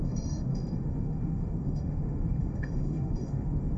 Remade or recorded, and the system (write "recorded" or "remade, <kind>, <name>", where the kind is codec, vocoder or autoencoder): remade, autoencoder, DAC-VAE